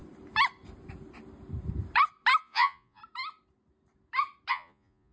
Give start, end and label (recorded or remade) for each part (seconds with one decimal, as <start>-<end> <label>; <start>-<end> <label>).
0.0-2.4 recorded; 2.4-3.0 remade; 3.0-4.5 recorded; 4.5-5.1 remade

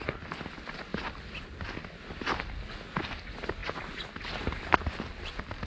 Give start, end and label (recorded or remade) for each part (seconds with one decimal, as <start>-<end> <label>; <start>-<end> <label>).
0.0-5.7 recorded

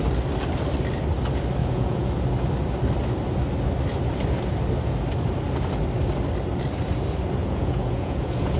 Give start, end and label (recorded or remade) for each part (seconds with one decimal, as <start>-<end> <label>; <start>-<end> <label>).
0.0-1.6 recorded; 1.6-2.1 remade; 2.1-7.4 recorded; 7.4-8.6 remade

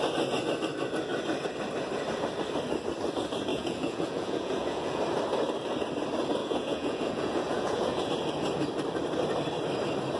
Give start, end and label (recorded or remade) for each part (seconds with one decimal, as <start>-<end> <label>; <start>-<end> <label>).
0.0-3.5 recorded; 3.5-5.0 remade; 5.0-6.4 recorded; 6.4-8.1 remade; 8.1-10.2 recorded

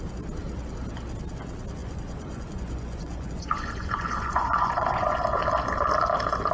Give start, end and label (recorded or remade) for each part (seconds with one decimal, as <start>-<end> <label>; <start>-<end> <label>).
0.0-1.8 recorded; 1.8-5.4 remade; 5.4-6.5 recorded

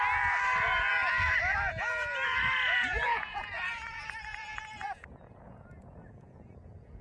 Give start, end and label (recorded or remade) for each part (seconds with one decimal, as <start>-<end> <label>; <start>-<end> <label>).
0.0-2.7 recorded; 2.7-7.0 remade

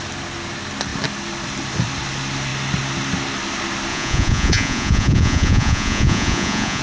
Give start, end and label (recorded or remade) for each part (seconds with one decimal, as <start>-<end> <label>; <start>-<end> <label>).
0.0-3.9 recorded; 3.9-6.8 remade